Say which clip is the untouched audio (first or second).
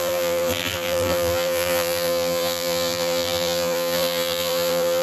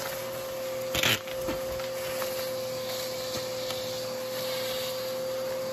second